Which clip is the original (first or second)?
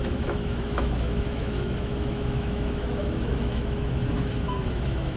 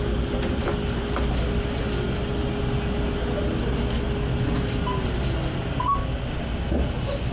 second